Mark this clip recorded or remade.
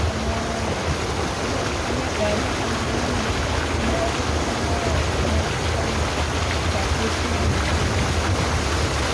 recorded